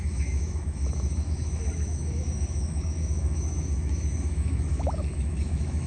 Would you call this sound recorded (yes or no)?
no